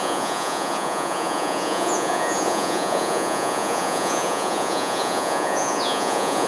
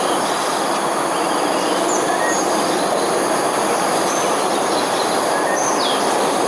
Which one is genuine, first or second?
second